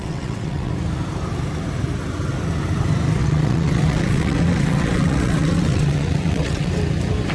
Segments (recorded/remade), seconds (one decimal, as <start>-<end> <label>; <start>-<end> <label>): 0.0-0.7 remade; 0.7-3.2 recorded; 3.2-6.7 remade; 6.7-7.3 recorded